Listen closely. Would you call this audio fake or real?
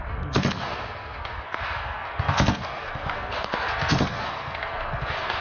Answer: fake